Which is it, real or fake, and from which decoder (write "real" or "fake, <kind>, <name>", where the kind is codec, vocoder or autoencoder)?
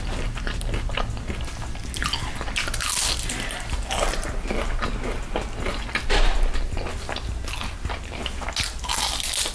real